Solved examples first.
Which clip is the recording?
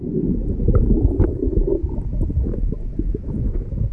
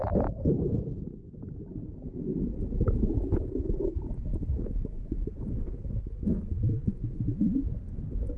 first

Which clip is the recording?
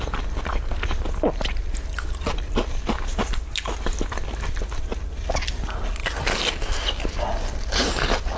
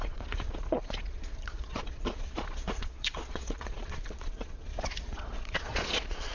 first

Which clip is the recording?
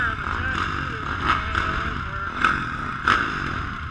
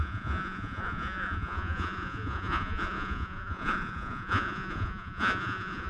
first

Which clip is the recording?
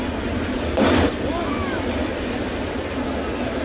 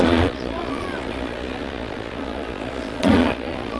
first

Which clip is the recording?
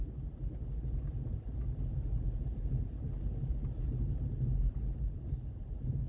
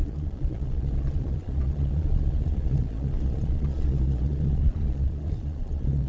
first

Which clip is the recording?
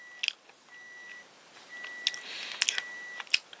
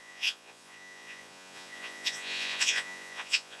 first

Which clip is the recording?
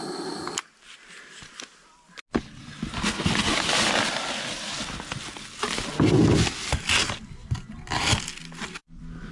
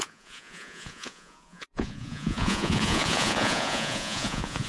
first